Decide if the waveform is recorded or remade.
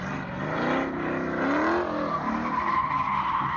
recorded